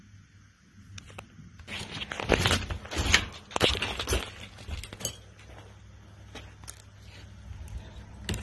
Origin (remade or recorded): recorded